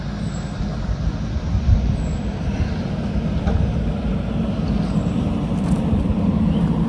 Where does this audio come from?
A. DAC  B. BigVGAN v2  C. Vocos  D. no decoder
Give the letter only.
D